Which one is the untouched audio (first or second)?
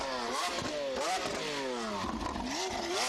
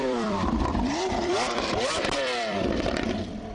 first